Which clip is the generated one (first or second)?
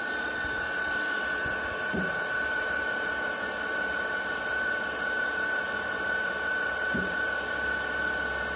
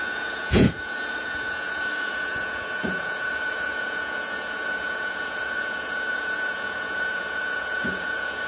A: second